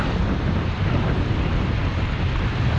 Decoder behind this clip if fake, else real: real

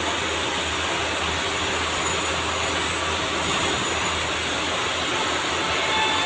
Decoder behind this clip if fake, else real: real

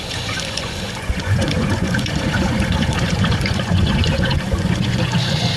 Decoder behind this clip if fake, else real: fake, vocoder, Vocos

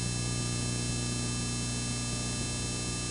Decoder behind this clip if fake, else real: real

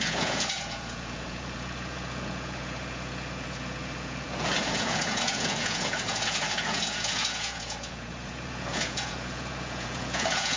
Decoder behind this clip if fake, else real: fake, vocoder, Vocos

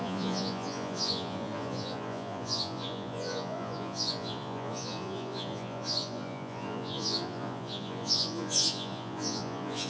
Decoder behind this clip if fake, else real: fake, vocoder, Vocos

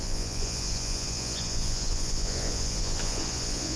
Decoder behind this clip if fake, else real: fake, vocoder, Vocos